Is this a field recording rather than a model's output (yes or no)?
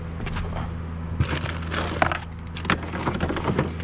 yes